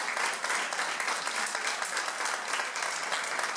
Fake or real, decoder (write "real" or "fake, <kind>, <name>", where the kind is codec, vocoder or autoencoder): real